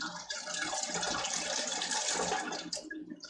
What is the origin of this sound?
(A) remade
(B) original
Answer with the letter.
A